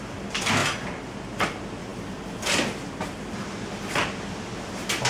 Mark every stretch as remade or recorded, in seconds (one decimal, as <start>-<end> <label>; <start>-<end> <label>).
0.0-1.9 remade; 1.9-5.1 recorded